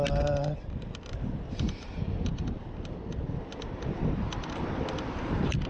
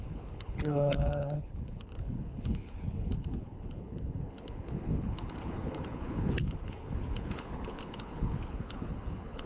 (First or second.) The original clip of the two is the first